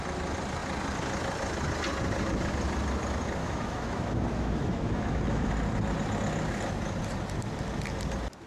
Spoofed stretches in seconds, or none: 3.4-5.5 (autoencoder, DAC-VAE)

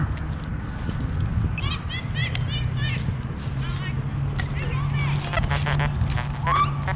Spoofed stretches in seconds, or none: none